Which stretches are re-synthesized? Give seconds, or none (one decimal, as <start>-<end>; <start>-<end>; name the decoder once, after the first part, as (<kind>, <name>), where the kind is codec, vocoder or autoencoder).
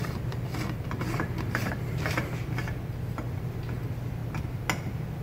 none